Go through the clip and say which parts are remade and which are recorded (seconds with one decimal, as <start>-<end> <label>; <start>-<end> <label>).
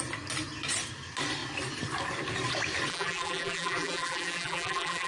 0.0-2.9 recorded; 2.9-5.1 remade